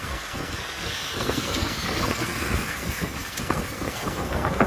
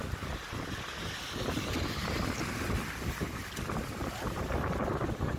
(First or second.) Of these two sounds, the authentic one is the second